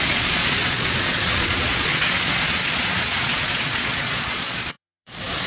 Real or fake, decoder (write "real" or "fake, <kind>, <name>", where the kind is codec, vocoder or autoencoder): fake, vocoder, Vocos